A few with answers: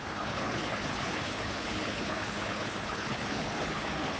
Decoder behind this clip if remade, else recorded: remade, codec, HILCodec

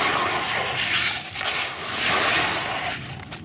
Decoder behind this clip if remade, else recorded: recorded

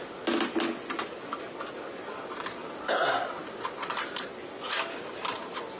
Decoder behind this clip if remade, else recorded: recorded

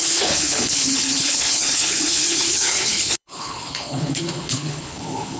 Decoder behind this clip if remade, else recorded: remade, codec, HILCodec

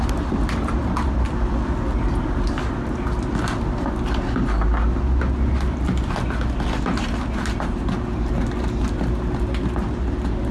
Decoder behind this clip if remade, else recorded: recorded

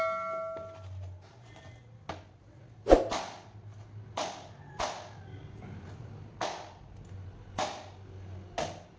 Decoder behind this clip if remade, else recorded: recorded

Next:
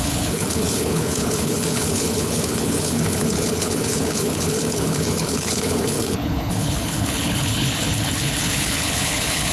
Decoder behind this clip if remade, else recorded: remade, codec, HILCodec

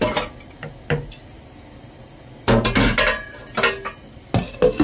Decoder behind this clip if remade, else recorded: recorded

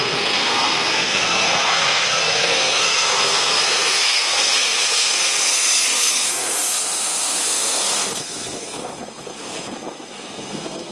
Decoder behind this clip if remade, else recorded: remade, codec, SNAC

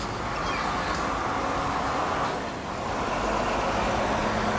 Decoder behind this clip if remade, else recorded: recorded